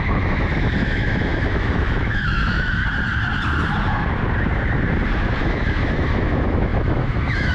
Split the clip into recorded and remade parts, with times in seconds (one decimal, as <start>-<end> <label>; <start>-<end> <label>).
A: 0.0-2.8 remade; 2.8-5.4 recorded; 5.4-7.5 remade